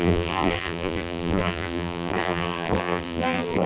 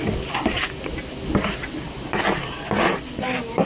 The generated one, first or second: first